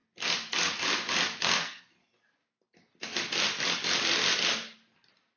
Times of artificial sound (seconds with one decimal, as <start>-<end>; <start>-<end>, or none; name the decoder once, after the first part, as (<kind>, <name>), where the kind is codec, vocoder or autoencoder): 1.4-2.0 (codec, SNAC)